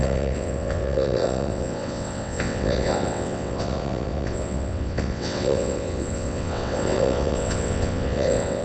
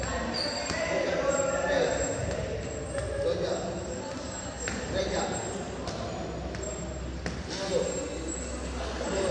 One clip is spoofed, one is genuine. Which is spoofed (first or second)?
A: first